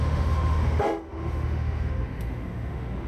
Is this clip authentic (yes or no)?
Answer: no